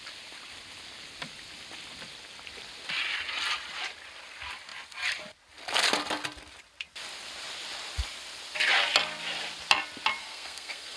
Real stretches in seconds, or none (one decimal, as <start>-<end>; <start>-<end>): 0.0-10.2